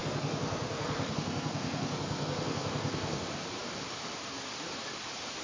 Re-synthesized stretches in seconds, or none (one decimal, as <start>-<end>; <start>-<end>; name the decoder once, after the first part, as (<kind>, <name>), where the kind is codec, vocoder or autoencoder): 0.0-3.2 (codec, SNAC)